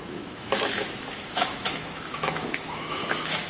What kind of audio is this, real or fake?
fake